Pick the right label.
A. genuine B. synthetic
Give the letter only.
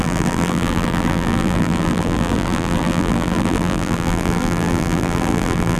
B